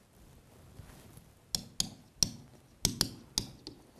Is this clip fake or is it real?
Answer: real